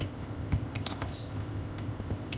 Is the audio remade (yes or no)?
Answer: yes